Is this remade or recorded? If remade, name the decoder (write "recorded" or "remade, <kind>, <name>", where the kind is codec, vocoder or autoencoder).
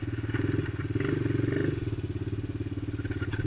recorded